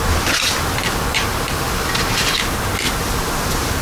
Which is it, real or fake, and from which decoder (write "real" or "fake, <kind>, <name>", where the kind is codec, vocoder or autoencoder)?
real